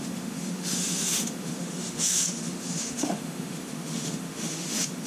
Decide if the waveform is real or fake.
fake